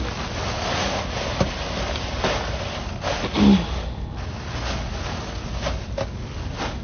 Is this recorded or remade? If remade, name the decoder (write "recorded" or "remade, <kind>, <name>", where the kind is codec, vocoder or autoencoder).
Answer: recorded